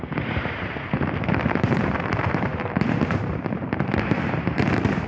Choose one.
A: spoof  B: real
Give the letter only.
A